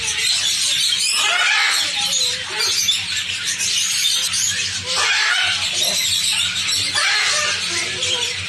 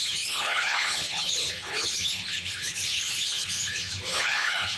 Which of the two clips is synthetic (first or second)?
second